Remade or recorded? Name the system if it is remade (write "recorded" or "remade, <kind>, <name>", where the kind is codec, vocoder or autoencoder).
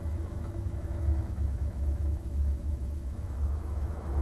remade, autoencoder, DAC-VAE